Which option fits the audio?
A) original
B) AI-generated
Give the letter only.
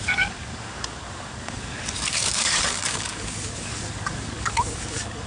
B